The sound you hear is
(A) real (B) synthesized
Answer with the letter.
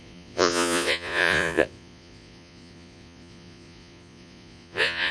B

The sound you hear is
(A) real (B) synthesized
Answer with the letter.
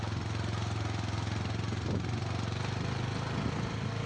A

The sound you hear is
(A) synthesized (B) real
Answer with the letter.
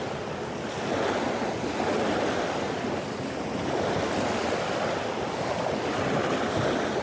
B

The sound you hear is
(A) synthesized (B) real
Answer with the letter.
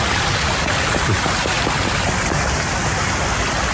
B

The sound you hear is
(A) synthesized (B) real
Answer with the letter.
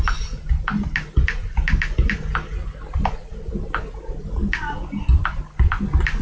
B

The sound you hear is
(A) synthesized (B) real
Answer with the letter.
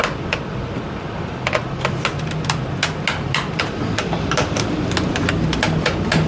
B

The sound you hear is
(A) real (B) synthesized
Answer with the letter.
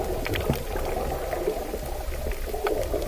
A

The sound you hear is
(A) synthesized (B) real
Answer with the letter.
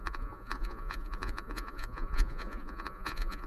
A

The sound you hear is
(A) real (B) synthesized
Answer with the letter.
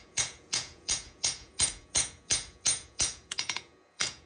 B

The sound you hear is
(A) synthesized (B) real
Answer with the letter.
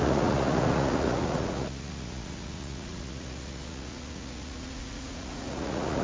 A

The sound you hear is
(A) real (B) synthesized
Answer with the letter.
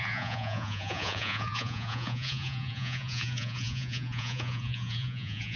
B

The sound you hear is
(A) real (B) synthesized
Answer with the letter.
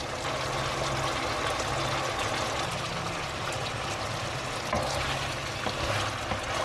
A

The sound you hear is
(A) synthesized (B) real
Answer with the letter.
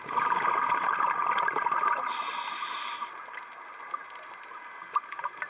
B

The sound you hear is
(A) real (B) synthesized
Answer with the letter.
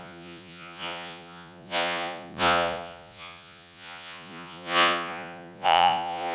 B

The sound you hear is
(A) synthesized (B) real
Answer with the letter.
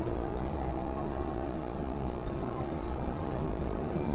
A